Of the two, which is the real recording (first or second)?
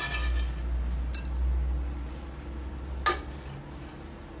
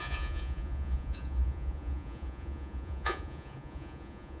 first